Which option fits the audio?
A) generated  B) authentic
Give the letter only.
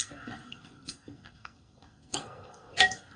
A